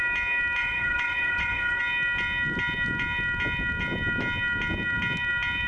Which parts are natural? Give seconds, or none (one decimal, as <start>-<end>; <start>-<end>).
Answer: 0.0-0.6; 1.8-5.7